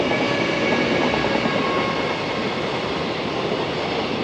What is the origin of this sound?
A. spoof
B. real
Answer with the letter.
B